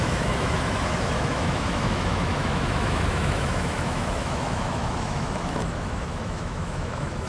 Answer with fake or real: fake